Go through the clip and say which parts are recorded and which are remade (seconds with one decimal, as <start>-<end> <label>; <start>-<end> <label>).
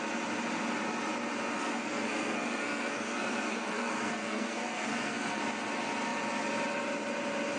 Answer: 0.0-1.6 recorded; 1.6-5.4 remade; 5.4-7.6 recorded